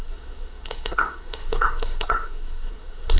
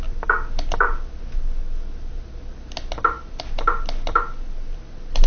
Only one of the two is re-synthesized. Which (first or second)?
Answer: first